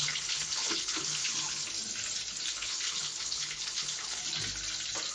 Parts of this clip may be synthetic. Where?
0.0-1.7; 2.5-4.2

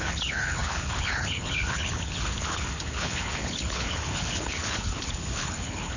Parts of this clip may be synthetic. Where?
0.0-6.0

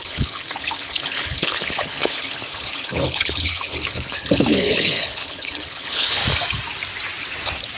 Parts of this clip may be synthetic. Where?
0.0-6.2

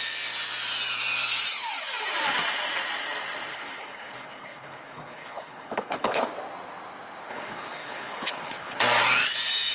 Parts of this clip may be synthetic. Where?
3.5-6.3; 7.3-8.8

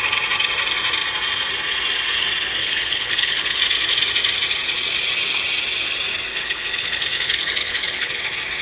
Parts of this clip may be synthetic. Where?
2.6-3.6; 6.3-8.2